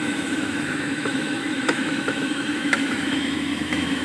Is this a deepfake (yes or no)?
yes